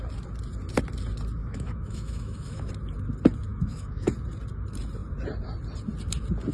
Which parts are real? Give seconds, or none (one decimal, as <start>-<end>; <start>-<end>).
0.0-1.4; 2.7-3.5; 4.1-6.5